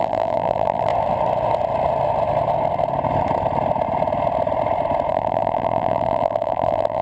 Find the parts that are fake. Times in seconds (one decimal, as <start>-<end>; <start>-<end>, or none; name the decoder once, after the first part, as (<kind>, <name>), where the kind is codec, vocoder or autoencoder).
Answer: 0.0-0.9 (vocoder, BigVGAN v2); 5.1-7.0